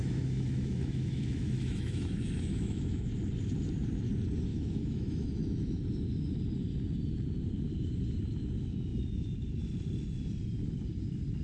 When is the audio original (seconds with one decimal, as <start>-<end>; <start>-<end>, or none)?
3.1-4.5; 5.8-11.4